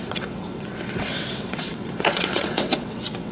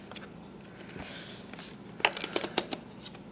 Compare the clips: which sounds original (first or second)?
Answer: second